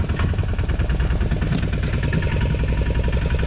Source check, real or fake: real